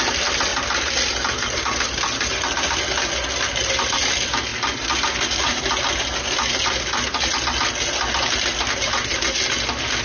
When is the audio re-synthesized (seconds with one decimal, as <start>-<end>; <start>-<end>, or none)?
0.5-1.8